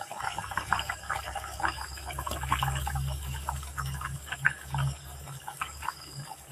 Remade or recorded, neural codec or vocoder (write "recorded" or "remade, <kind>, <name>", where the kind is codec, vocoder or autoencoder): remade, codec, DAC